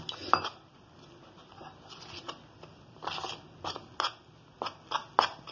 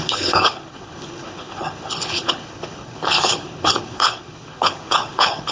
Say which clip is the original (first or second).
first